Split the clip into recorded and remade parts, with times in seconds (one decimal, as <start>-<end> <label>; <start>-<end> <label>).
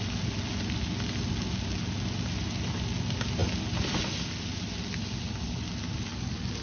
0.0-6.6 recorded